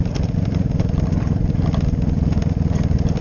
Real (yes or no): yes